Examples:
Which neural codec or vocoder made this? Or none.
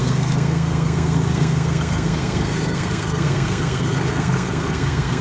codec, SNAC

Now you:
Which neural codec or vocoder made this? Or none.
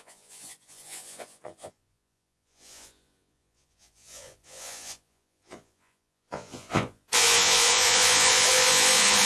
vocoder, Vocos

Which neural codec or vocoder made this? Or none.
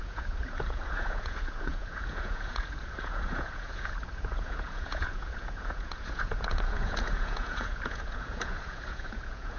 vocoder, Vocos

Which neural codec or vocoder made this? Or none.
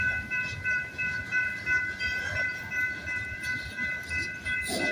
vocoder, BigVGAN v2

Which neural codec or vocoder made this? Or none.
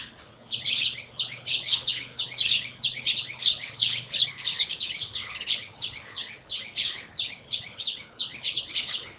codec, HILCodec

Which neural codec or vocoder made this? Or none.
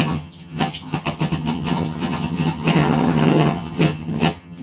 vocoder, HiFi-GAN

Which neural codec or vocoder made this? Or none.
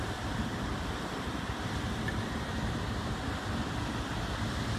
vocoder, BigVGAN v2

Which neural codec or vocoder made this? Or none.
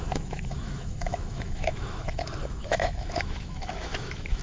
autoencoder, DAC-VAE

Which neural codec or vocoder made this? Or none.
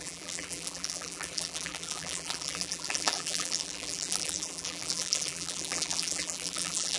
vocoder, BigVGAN v2